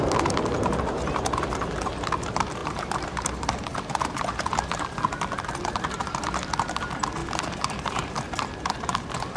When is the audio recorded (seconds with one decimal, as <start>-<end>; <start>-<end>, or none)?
0.0-7.2; 8.3-9.4